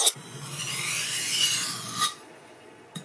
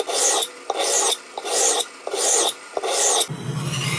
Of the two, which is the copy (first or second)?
first